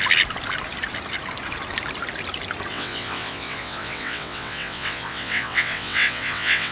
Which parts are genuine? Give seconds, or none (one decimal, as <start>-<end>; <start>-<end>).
0.0-2.7